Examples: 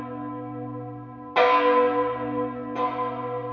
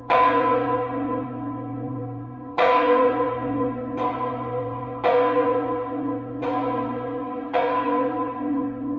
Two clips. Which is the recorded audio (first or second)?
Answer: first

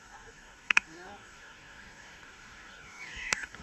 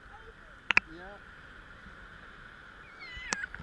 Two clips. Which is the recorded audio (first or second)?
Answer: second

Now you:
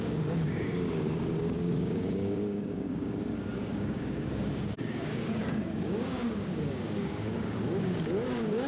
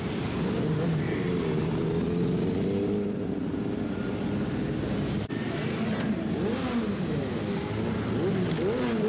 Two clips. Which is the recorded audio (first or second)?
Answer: second